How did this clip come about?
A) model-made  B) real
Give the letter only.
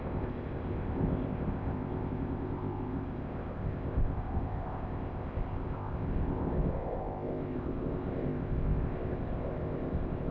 A